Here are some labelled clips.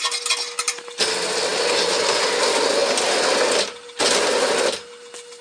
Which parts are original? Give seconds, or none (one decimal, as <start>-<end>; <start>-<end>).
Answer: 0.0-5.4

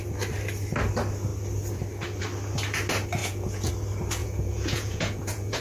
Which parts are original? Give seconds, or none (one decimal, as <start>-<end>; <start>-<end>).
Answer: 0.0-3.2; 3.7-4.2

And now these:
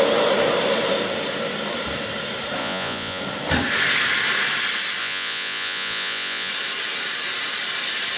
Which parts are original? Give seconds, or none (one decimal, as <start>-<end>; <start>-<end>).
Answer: 0.0-2.6; 3.2-5.0; 6.5-8.2

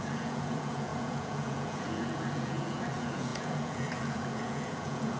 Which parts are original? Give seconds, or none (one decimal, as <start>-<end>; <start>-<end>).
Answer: none

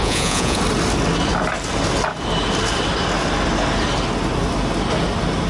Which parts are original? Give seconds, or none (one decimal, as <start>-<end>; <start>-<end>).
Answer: 0.6-5.5